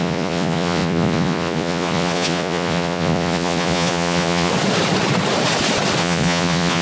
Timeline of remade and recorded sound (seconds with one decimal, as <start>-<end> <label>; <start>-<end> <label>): 0.0-4.5 remade; 4.5-6.0 recorded; 6.0-6.8 remade